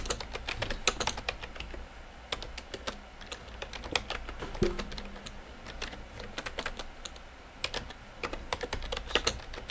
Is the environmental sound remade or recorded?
recorded